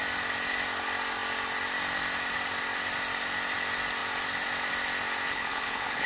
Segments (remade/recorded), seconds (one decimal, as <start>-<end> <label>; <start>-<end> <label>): 0.0-5.3 recorded; 5.3-6.1 remade